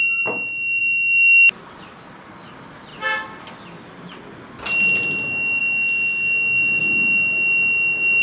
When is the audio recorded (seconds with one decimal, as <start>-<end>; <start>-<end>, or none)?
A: 0.0-8.2

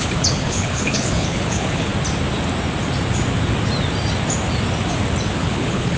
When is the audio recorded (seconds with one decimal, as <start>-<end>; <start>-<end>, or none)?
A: 1.9-5.4

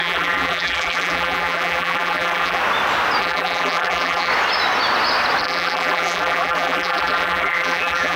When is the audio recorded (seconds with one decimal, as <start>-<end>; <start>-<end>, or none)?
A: 2.6-3.2; 4.3-5.4

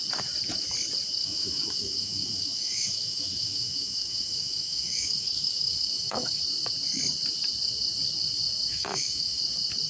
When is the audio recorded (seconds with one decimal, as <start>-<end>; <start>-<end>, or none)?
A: 0.0-1.2; 6.4-8.7; 9.4-9.9

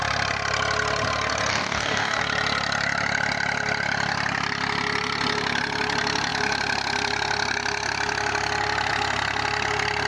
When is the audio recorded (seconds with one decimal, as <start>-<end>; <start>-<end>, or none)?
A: 0.0-1.5; 2.2-10.1

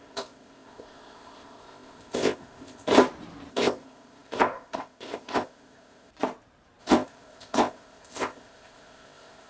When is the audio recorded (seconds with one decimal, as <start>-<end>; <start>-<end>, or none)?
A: 2.9-3.5; 6.1-6.8

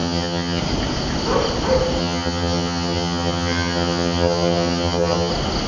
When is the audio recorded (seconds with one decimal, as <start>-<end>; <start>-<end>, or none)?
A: 0.6-2.0; 5.3-5.7

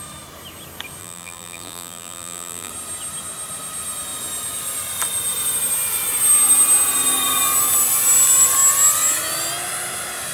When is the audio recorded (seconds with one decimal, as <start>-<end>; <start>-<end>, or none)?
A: 0.0-1.0; 2.7-10.3